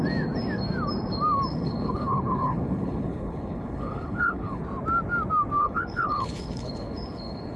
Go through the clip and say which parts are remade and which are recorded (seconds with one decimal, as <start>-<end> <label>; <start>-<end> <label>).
0.0-1.5 recorded; 1.5-4.6 remade; 4.6-5.6 recorded; 5.6-7.6 remade